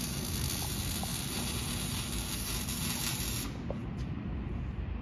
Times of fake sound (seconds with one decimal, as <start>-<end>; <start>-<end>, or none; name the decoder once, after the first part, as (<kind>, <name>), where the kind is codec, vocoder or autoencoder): none

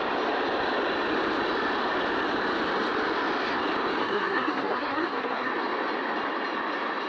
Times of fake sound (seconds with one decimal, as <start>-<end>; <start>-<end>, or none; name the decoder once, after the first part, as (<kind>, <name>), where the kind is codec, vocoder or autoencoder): 4.0-5.5 (codec, SNAC)

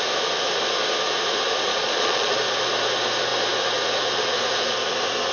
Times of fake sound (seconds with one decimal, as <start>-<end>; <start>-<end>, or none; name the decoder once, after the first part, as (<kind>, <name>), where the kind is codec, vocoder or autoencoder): 1.7-2.4 (vocoder, Vocos)

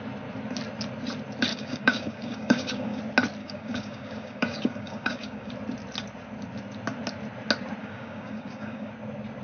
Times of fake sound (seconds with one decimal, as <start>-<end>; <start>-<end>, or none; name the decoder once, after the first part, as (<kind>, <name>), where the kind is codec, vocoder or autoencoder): 1.5-3.0 (codec, DAC); 3.4-5.5; 7.8-8.9

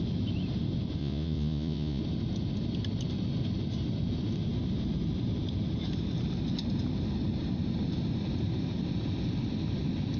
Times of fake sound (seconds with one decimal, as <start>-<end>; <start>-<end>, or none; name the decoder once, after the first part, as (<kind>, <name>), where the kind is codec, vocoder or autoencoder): 1.0-2.0 (vocoder, Vocos)

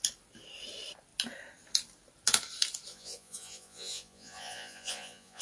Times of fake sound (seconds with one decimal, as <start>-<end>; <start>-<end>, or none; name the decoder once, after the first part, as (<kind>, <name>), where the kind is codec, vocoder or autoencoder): 2.9-5.4 (vocoder, Vocos)

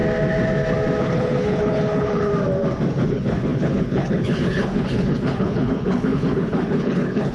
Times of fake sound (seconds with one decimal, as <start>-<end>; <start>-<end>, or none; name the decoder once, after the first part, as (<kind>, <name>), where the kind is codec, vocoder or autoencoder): 1.0-2.3 (codec, HILCodec); 3.1-7.3

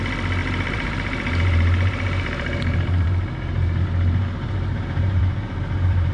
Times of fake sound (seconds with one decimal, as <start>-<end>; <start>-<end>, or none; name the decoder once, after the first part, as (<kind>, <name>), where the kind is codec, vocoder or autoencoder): 0.4-3.8 (vocoder, BigVGAN v2); 4.2-6.1